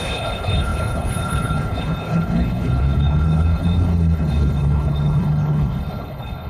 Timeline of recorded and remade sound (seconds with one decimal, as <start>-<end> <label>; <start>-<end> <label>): 0.0-6.5 remade